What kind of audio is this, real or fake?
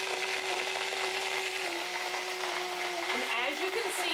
real